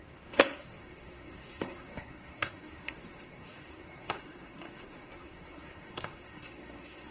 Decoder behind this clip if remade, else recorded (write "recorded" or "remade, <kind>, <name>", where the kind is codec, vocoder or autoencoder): remade, codec, SNAC